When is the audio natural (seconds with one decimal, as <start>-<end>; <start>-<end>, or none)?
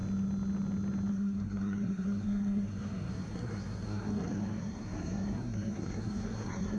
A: 0.0-1.1